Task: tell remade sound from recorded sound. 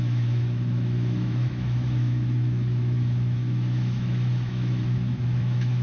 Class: remade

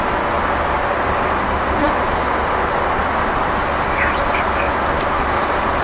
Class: recorded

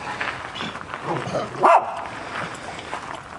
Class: recorded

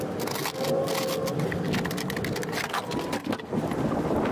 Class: recorded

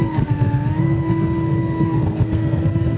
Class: remade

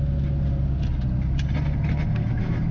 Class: recorded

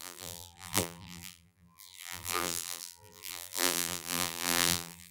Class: remade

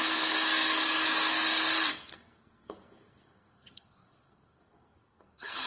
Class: remade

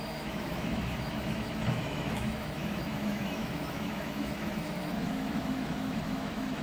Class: remade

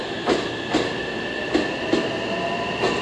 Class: recorded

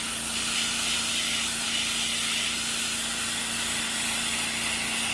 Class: recorded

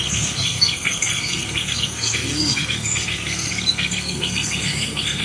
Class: remade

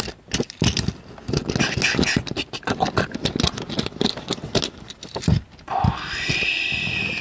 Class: recorded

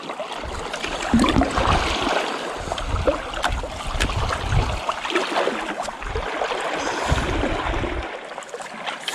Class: recorded